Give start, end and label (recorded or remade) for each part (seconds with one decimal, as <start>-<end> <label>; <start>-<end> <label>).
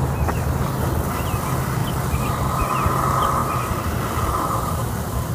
0.0-5.3 recorded